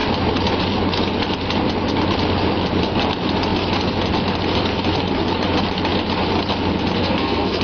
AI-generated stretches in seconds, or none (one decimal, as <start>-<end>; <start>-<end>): 7.0-7.6